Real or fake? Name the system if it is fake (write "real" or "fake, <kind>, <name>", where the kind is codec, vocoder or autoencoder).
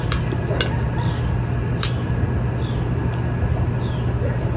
real